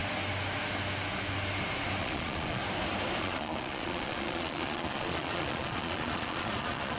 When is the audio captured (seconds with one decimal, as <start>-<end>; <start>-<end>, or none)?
0.0-2.0; 2.6-3.2